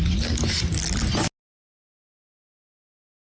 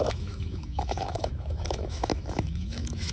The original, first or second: first